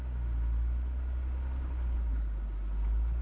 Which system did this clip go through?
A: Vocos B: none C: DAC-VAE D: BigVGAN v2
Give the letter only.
B